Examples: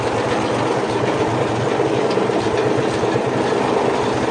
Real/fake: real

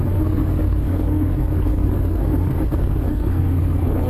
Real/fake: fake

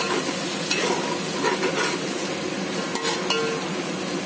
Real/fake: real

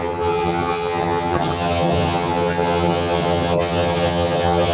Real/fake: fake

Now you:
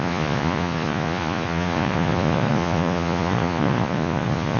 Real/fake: fake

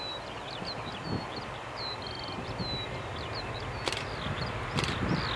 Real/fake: real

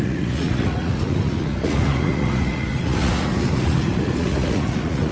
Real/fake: fake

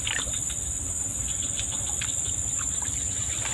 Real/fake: fake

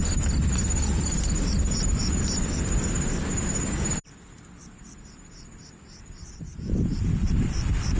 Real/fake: fake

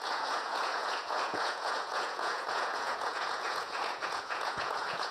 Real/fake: fake